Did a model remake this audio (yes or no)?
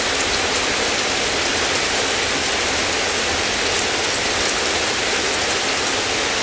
no